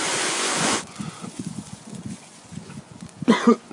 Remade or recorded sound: remade